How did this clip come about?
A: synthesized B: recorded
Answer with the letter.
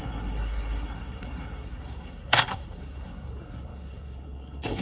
A